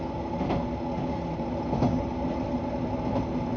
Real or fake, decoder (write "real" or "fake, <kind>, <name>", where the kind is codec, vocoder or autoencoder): real